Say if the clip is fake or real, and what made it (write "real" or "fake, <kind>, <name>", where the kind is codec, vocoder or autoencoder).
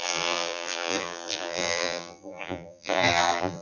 fake, vocoder, BigVGAN v2